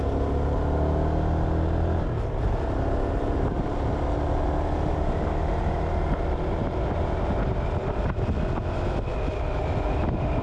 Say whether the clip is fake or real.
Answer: real